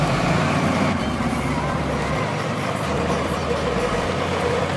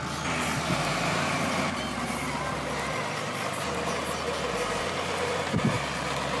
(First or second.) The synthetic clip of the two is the first